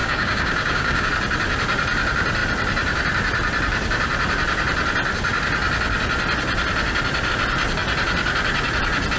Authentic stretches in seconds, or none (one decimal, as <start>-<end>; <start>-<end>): 1.1-9.2